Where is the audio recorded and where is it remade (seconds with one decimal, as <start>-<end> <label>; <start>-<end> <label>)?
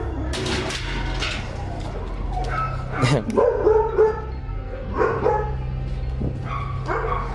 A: 0.0-4.4 recorded; 4.4-4.9 remade; 4.9-7.3 recorded